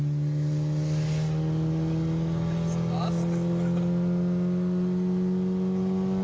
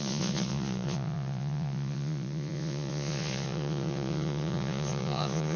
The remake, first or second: second